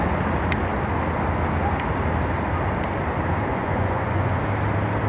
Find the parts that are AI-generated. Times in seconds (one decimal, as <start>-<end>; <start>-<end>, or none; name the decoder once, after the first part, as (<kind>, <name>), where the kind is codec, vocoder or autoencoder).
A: 3.5-4.4 (vocoder, Vocos)